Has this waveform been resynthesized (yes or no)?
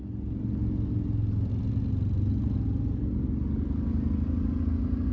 no